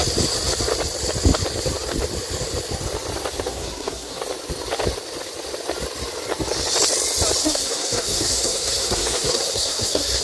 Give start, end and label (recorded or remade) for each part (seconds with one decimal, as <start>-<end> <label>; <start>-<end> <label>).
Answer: 0.0-3.5 recorded; 3.5-4.2 remade; 4.2-7.4 recorded; 7.4-10.2 remade